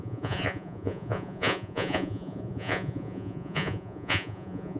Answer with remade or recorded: remade